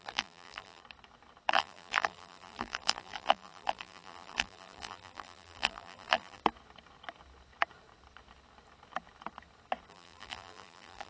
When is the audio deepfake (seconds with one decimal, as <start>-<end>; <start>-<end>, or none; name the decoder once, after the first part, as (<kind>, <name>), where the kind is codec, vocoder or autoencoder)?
0.0-0.8 (vocoder, BigVGAN v2); 1.5-6.4; 9.9-11.1

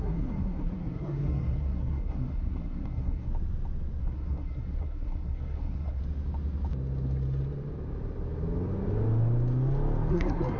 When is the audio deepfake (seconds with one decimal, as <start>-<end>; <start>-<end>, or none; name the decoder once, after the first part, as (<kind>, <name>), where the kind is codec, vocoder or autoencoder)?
0.0-3.3 (codec, SNAC); 4.0-6.0; 10.1-10.6

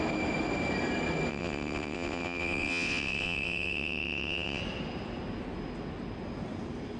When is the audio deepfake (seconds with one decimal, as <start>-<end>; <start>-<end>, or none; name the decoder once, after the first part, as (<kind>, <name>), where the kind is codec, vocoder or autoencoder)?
1.3-4.6 (vocoder, WaveNeXt)

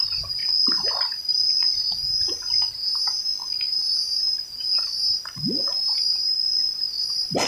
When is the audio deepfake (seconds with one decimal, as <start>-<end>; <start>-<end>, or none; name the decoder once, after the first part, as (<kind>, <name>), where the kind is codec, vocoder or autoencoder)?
none

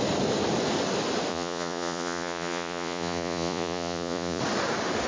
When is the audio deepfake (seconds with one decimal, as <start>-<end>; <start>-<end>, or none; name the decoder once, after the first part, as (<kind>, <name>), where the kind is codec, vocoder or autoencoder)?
1.3-4.4 (vocoder, Vocos)

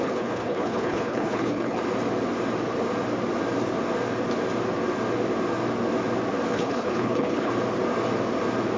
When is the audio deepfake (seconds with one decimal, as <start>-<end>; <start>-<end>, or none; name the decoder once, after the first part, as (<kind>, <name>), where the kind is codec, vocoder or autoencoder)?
0.0-1.8 (codec, HILCodec); 6.5-7.5

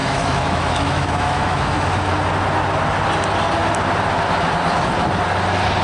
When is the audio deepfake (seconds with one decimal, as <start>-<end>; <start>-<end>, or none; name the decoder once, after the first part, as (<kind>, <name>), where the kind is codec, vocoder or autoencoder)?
0.0-2.1 (autoencoder, DAC-VAE)

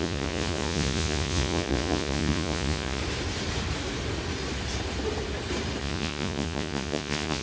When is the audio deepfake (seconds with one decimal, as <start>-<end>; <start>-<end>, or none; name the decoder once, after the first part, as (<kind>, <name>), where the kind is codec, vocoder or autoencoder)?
0.0-3.0 (vocoder, Vocos); 5.8-7.4